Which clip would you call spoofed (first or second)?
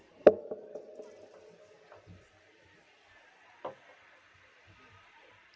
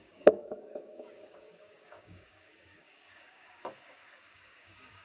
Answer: second